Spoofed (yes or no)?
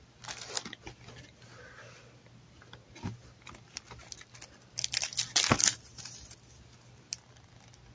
no